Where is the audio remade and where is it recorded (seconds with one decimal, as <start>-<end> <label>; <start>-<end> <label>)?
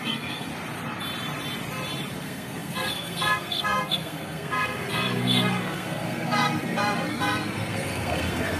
0.0-0.5 remade; 0.5-2.1 recorded; 2.1-8.6 remade